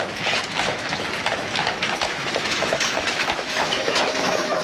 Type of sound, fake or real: fake